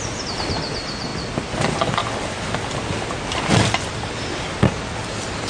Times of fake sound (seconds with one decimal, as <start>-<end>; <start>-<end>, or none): none